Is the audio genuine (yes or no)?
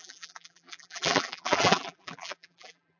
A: no